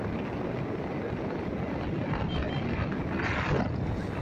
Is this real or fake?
real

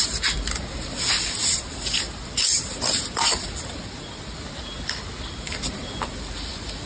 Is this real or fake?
fake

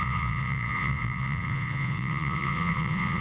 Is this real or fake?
fake